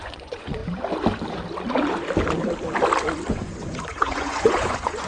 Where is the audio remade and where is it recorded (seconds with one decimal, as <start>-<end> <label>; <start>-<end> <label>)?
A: 0.0-0.6 remade; 0.6-3.3 recorded; 3.3-5.1 remade